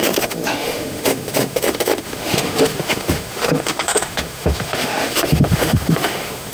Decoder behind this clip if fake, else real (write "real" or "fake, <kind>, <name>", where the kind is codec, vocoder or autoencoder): fake, autoencoder, DAC-VAE